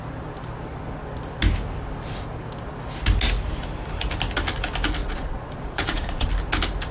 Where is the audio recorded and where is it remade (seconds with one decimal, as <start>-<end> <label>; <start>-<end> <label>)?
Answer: 0.0-5.0 recorded; 5.0-6.3 remade; 6.3-6.9 recorded